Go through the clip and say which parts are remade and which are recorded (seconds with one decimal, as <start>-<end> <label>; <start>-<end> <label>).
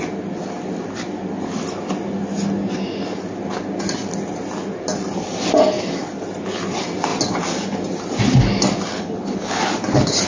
0.0-8.9 recorded; 8.9-9.6 remade; 9.6-10.3 recorded